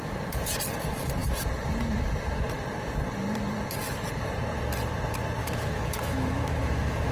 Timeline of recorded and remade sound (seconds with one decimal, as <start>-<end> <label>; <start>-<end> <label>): 0.0-5.4 recorded; 5.4-7.1 remade